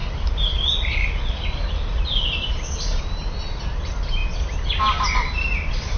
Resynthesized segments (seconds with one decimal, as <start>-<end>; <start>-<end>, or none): none